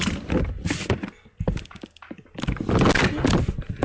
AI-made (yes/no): no